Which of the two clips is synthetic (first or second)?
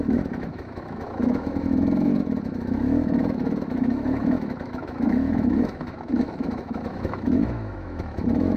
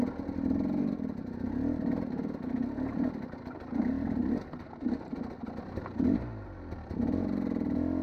first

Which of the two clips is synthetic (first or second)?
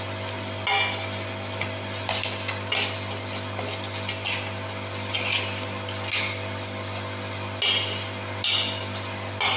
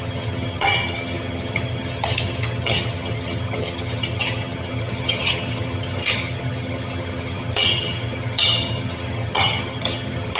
second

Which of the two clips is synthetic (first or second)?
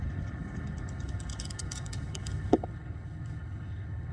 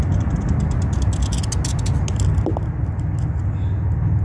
first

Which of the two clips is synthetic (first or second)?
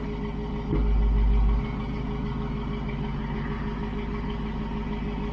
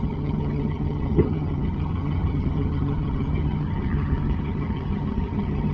second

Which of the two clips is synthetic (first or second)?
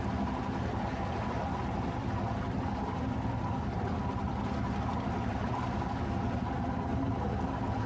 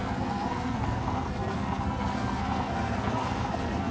second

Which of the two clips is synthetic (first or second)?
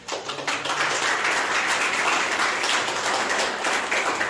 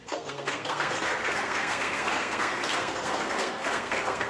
second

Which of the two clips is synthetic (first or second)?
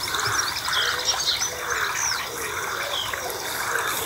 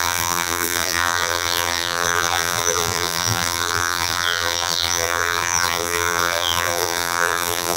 second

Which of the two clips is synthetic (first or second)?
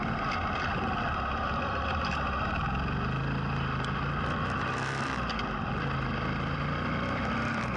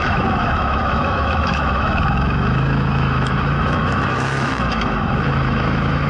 second